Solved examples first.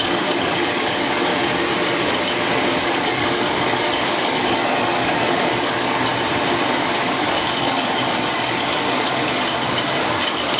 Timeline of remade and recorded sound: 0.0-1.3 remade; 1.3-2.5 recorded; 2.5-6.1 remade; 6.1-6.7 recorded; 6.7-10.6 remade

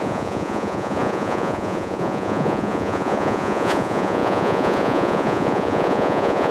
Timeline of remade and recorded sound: 0.0-6.5 remade

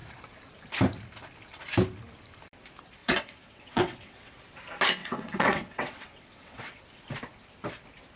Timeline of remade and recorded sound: 0.0-3.0 recorded; 3.0-4.3 remade; 4.3-5.0 recorded; 5.0-6.8 remade; 6.8-8.2 recorded

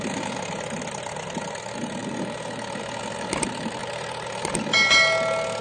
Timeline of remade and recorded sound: 0.0-5.6 recorded

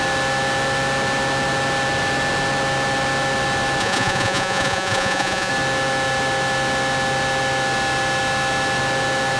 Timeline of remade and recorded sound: 0.0-3.8 recorded; 3.8-5.5 remade; 5.5-9.4 recorded

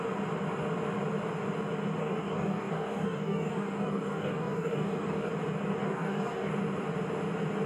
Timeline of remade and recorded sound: 0.0-2.0 recorded; 2.0-5.3 remade; 5.3-5.8 recorded; 5.8-6.5 remade; 6.5-7.7 recorded

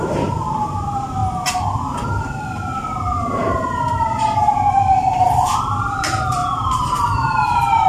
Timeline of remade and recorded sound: 0.0-1.2 remade; 1.2-5.9 recorded; 5.9-6.4 remade; 6.4-7.5 recorded; 7.5-7.9 remade